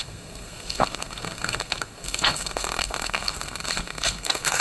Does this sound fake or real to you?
fake